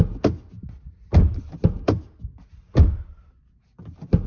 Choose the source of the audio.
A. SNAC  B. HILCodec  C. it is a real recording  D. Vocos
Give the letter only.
C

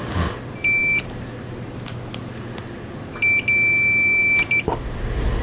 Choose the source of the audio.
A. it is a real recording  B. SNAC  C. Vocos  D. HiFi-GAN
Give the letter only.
A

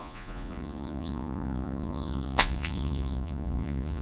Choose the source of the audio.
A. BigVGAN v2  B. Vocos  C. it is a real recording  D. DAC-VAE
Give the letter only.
B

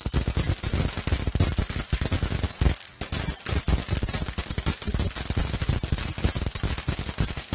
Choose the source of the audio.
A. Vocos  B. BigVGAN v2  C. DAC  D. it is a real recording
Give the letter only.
D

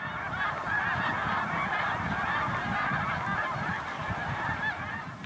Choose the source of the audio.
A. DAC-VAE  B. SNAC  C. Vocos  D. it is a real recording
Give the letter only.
D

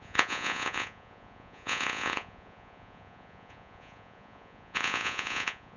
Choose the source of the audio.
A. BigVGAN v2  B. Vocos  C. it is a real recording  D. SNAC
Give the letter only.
B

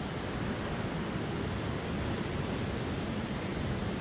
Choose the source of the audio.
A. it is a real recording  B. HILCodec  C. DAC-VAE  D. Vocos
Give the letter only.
A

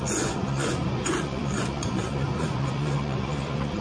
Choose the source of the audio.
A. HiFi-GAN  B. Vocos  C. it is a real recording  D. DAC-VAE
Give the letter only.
B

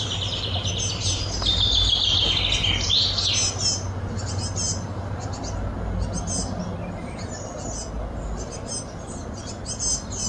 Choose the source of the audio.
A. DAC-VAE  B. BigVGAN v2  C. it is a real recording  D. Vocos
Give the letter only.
C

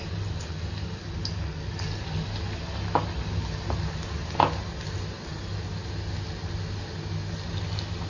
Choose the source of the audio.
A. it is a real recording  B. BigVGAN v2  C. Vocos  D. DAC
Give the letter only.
A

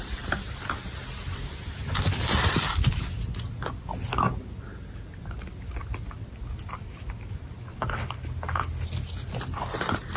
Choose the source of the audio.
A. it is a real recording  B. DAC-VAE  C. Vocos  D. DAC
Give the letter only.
A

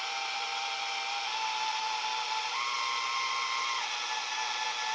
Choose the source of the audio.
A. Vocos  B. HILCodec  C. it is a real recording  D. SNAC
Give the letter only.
C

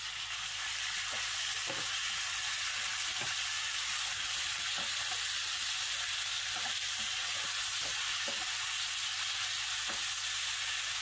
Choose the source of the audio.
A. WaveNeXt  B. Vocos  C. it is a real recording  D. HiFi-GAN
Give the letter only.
C